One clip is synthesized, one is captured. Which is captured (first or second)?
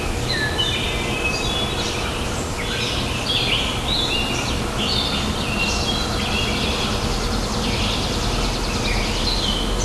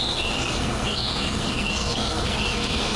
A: first